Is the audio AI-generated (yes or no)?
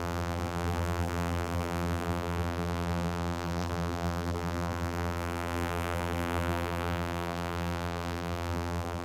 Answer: yes